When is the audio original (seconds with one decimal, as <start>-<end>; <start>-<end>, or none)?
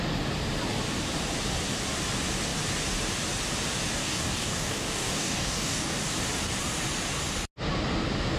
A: 0.0-4.0; 6.0-8.4